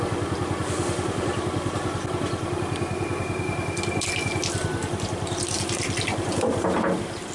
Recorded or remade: recorded